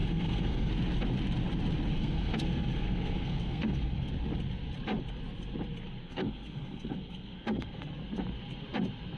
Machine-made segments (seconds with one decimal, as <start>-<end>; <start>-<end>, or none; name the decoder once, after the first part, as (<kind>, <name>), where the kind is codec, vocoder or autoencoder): 0.0-0.7 (codec, SNAC); 1.9-4.1; 6.0-7.9